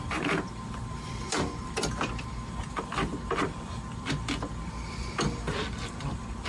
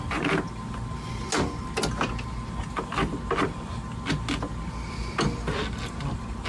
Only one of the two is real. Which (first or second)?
second